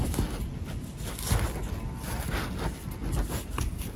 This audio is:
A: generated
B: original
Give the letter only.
B